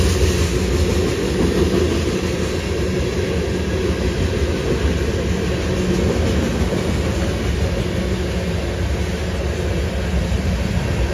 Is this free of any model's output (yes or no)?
yes